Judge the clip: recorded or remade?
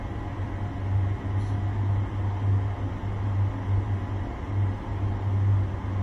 recorded